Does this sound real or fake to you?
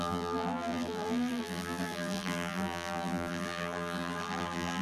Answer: fake